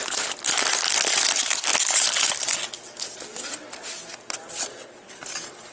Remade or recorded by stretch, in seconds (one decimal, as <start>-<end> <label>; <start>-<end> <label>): 0.0-5.7 recorded